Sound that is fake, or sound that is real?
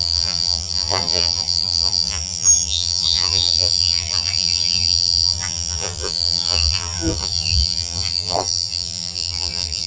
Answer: fake